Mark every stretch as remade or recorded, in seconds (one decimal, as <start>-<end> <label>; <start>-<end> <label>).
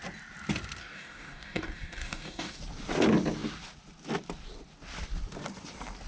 0.0-0.8 recorded; 0.8-2.6 remade; 2.6-6.1 recorded